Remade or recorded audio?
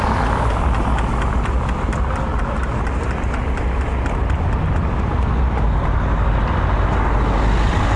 recorded